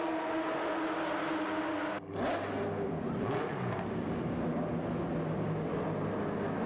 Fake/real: real